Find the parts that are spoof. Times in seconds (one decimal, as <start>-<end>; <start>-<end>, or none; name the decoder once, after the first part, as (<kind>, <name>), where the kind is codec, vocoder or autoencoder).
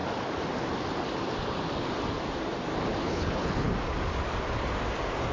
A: 3.0-3.7 (codec, HILCodec)